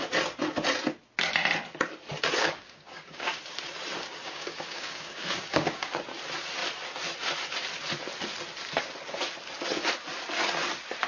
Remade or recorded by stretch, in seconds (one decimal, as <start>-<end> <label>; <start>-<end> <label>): 0.0-2.4 recorded; 2.4-3.4 remade; 3.4-4.2 recorded; 4.2-6.0 remade; 6.0-11.1 recorded